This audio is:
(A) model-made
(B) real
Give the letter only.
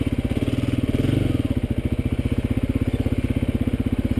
B